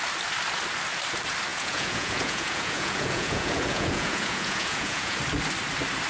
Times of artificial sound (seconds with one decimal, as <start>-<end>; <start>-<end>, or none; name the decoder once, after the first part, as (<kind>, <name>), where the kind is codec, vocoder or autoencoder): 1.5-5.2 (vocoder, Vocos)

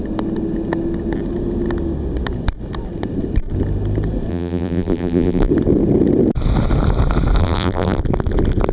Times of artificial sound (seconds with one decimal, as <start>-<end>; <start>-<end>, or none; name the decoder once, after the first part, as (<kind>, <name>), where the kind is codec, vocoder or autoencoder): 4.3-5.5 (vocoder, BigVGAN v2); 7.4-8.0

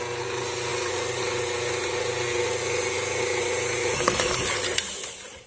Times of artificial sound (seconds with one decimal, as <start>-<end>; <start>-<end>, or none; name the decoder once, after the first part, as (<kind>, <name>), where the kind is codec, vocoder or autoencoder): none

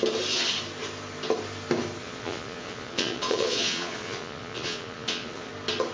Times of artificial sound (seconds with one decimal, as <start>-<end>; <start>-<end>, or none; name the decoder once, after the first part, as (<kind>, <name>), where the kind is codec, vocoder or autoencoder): 2.0-5.5 (vocoder, Vocos)

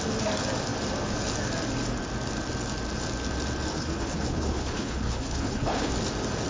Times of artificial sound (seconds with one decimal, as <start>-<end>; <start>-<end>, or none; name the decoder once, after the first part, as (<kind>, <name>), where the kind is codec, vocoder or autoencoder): 3.7-5.9 (codec, HILCodec)